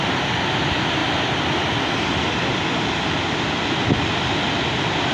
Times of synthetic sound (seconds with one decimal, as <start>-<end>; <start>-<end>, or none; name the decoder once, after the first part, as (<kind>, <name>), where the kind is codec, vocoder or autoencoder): none